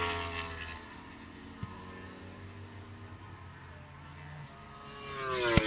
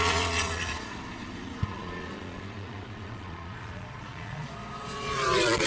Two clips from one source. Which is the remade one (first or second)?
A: second